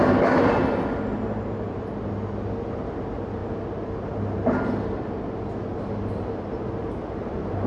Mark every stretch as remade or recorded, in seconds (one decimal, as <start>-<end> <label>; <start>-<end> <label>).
0.0-1.1 recorded; 1.1-1.8 remade; 1.8-6.8 recorded; 6.8-7.7 remade